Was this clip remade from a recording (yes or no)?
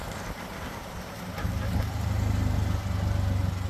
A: no